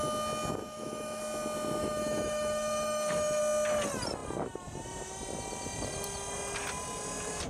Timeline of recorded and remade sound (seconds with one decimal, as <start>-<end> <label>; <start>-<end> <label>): 0.0-0.6 recorded; 0.6-1.2 remade; 1.2-1.8 recorded; 1.8-3.4 remade; 3.4-7.5 recorded